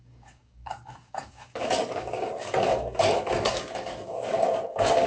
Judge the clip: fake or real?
fake